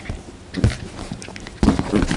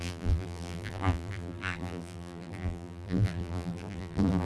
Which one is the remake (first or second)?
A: second